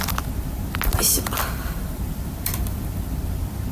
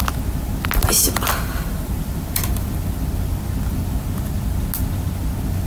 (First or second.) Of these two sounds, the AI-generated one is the first